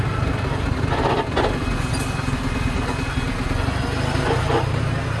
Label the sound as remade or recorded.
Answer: recorded